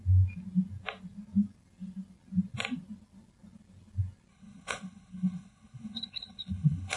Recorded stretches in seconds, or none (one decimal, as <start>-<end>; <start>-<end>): 0.0-4.3